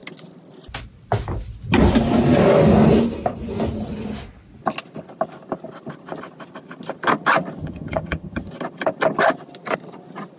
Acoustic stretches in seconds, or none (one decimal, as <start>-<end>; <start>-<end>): 0.0-7.6; 8.5-10.4

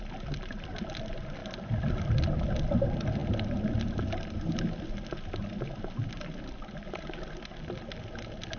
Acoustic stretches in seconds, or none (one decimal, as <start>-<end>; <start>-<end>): 0.0-8.6

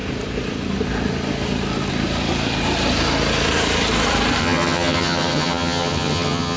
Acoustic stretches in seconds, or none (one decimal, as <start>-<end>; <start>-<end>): 0.0-4.4

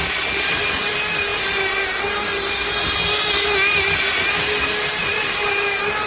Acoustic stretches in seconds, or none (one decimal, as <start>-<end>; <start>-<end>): 0.0-6.1

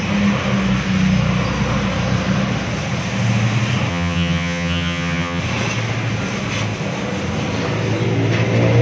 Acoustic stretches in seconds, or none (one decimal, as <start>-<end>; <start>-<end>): 0.0-3.9; 5.4-8.8

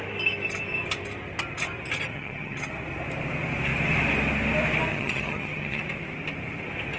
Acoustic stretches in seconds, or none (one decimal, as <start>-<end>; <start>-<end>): 0.0-2.1; 2.7-4.9; 5.8-7.0

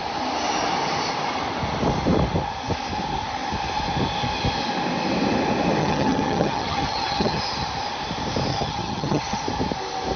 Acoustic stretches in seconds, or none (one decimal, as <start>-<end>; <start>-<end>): 0.0-5.8; 7.4-8.5; 9.4-10.2